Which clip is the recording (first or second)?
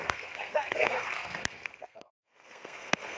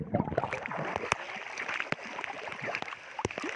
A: second